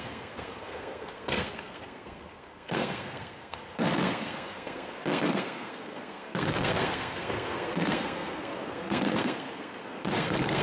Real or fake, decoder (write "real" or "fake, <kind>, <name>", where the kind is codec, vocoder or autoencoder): fake, codec, SNAC